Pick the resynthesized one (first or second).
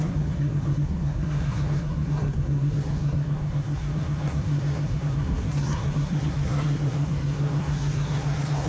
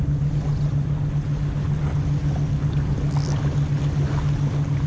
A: first